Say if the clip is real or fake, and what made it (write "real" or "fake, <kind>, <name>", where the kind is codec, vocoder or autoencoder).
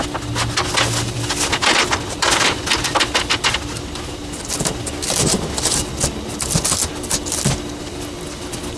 real